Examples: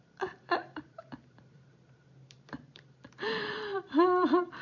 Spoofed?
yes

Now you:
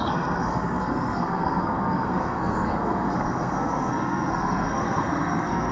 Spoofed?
yes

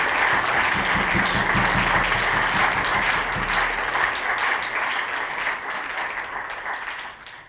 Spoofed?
no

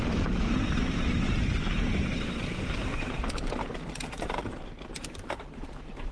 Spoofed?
yes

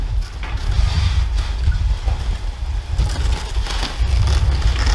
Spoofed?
no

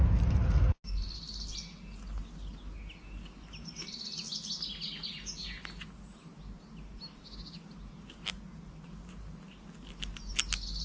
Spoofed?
no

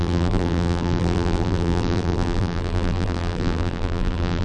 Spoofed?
yes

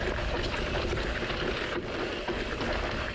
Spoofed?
no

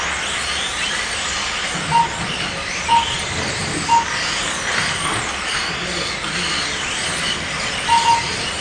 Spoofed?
no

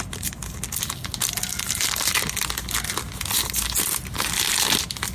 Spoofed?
no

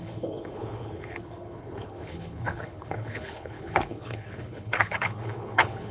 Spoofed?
yes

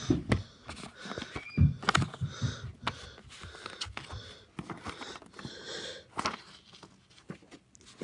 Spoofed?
no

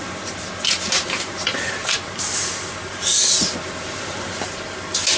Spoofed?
yes